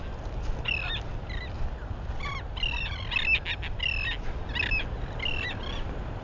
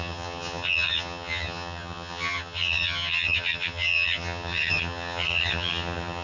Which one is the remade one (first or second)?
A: second